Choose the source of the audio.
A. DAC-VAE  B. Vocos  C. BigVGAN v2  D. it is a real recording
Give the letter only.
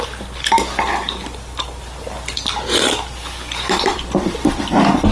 C